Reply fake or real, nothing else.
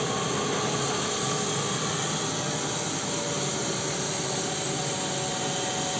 real